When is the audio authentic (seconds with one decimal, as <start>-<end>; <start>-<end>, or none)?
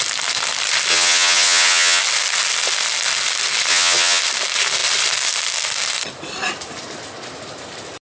0.0-0.9; 2.0-3.7; 4.2-8.0